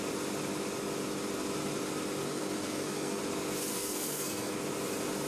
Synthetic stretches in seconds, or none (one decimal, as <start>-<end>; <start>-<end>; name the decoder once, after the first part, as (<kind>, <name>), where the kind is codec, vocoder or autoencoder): 2.2-3.2 (codec, SNAC); 3.7-4.6